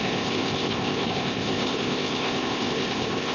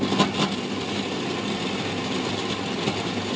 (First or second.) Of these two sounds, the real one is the second